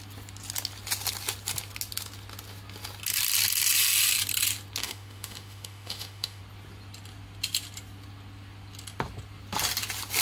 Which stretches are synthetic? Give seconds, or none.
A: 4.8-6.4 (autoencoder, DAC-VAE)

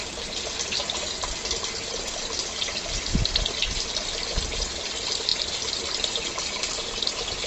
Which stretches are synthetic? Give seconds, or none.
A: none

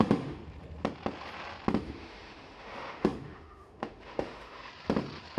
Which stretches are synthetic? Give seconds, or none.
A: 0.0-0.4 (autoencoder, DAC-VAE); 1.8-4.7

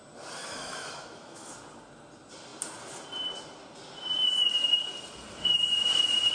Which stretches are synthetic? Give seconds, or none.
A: 0.4-1.5 (autoencoder, DAC-VAE)

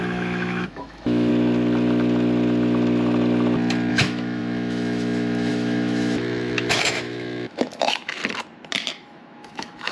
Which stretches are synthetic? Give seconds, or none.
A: 0.0-1.3 (autoencoder, DAC-VAE); 3.9-8.2; 8.9-9.9